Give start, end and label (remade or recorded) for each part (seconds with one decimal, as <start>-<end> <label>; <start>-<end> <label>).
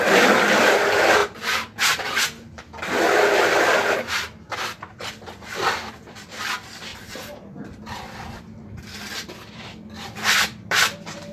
0.0-1.2 remade; 1.2-5.9 recorded; 5.9-6.9 remade; 6.9-8.4 recorded; 8.4-11.3 remade